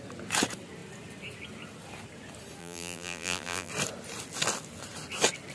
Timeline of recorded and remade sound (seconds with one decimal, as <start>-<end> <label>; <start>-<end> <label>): 0.0-2.6 recorded; 2.6-3.7 remade; 3.7-5.5 recorded